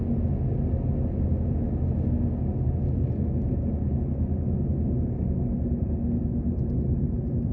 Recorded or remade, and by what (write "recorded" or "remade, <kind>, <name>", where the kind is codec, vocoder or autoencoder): recorded